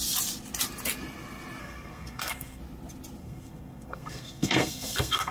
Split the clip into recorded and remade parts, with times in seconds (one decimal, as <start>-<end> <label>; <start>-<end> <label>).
0.0-1.6 recorded; 1.6-2.6 remade; 2.6-3.2 recorded; 3.2-5.3 remade

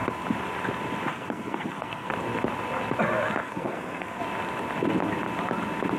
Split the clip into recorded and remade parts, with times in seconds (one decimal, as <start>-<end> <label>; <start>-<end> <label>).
0.0-1.1 recorded; 1.1-2.1 remade; 2.1-3.4 recorded; 3.4-4.2 remade; 4.2-6.0 recorded